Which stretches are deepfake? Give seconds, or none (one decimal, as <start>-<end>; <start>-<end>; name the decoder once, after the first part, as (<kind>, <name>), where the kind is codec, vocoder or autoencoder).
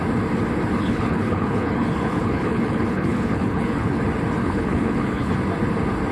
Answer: 0.8-4.0 (codec, HILCodec); 4.4-5.3